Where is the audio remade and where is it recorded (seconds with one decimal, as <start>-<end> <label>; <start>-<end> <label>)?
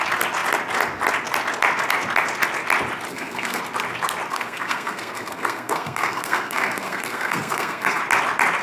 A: 0.0-3.1 recorded; 3.1-3.6 remade; 3.6-4.3 recorded; 4.3-8.0 remade; 8.0-8.6 recorded